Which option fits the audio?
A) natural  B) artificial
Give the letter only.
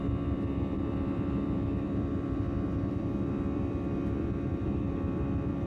B